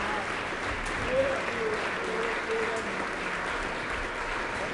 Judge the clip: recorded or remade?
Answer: recorded